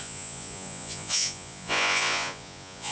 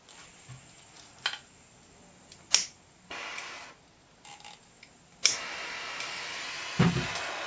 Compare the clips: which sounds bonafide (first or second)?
second